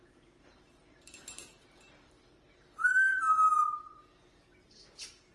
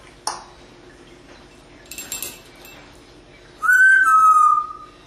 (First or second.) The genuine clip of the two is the second